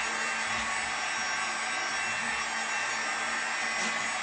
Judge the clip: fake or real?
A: real